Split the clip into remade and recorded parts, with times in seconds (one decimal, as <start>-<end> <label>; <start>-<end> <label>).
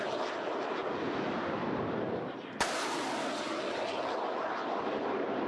0.0-5.5 recorded